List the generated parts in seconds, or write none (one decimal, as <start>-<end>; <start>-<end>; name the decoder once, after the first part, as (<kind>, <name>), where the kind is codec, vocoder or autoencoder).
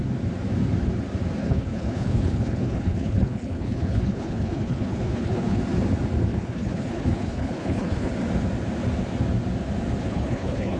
1.4-5.6 (codec, HILCodec); 6.3-8.1; 10.0-10.8